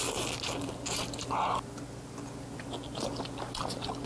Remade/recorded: recorded